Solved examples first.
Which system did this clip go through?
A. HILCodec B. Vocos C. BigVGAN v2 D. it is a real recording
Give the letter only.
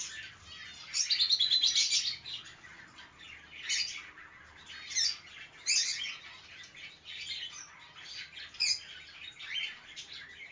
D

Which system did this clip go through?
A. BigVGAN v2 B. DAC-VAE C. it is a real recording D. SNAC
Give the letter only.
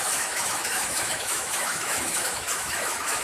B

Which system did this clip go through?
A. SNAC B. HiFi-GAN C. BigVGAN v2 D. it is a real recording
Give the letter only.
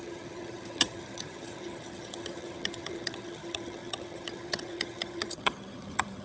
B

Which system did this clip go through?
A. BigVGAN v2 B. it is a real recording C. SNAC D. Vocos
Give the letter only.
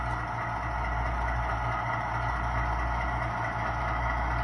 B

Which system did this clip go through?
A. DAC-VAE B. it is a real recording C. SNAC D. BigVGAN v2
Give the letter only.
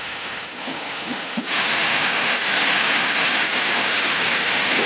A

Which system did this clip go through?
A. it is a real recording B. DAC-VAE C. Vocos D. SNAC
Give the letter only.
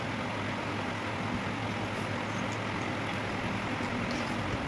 A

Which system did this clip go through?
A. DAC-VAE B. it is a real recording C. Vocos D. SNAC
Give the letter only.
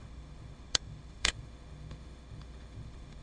A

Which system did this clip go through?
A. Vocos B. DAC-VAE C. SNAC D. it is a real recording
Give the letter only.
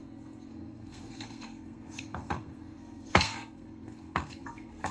C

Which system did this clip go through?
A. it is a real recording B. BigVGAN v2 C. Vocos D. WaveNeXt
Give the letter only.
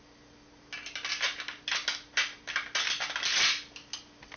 A